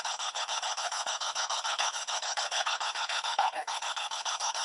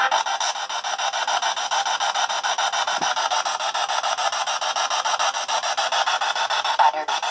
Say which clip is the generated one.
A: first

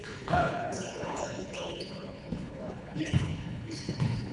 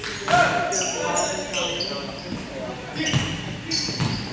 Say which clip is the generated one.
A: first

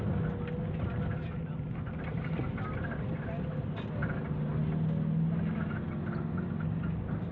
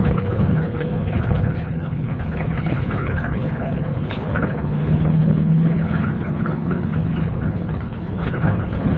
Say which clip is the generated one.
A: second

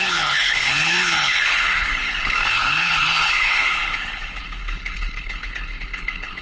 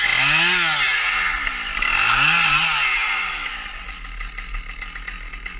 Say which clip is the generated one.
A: first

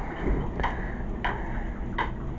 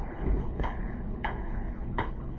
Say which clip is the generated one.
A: second